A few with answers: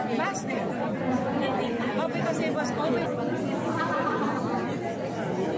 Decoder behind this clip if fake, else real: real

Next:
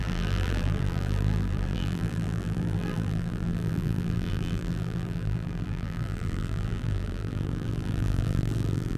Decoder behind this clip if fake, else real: fake, vocoder, BigVGAN v2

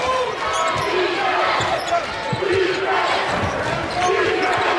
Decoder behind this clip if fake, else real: real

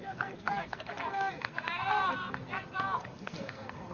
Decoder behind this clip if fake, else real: fake, codec, SNAC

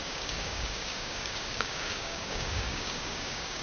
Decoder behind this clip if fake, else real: fake, codec, DAC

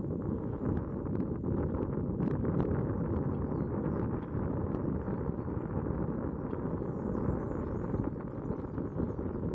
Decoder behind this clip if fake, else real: real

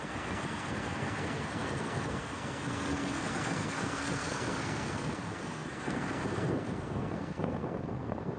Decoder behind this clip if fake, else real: fake, codec, SNAC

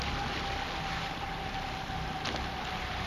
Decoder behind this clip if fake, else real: real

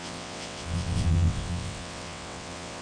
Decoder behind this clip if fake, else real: fake, vocoder, WaveNeXt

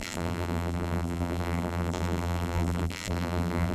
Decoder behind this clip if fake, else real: fake, vocoder, BigVGAN v2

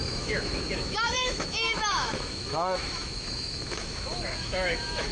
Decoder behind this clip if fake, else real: fake, autoencoder, DAC-VAE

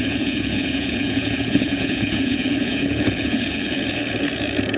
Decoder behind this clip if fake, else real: fake, vocoder, Vocos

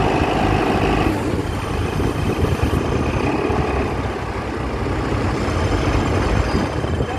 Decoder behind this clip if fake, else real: real